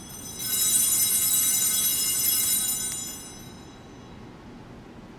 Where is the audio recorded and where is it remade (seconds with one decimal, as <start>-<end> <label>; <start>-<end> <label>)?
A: 0.0-5.2 recorded